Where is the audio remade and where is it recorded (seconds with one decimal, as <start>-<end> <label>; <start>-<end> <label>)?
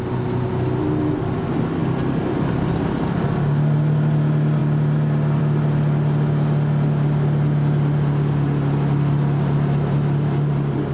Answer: 0.0-10.9 recorded